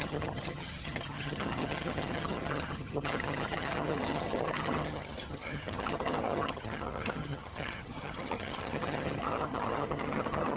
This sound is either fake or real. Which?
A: fake